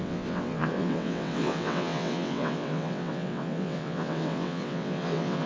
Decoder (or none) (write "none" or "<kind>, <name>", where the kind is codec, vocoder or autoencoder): vocoder, WaveNeXt